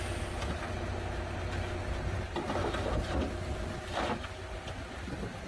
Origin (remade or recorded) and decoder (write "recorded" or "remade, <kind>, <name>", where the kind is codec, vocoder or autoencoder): recorded